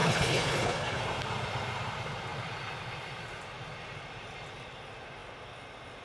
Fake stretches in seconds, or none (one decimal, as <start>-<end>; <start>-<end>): 0.0-1.0